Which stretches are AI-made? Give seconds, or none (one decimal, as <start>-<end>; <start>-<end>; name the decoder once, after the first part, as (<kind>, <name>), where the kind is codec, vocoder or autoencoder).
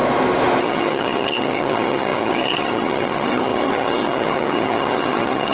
0.6-5.5 (vocoder, HiFi-GAN)